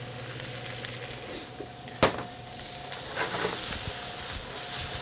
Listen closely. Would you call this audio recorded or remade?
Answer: recorded